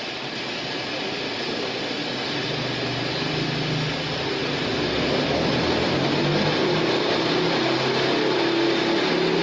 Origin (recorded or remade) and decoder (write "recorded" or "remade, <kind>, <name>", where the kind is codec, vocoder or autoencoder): recorded